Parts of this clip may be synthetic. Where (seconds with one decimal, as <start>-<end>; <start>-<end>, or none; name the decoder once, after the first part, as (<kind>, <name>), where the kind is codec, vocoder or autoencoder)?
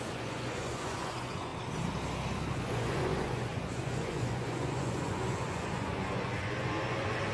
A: 0.0-1.5 (vocoder, Vocos); 2.5-7.3